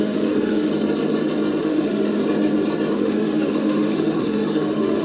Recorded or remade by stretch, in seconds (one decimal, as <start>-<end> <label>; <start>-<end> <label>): 0.0-0.7 remade; 0.7-1.6 recorded; 1.6-2.2 remade; 2.2-2.9 recorded; 2.9-5.0 remade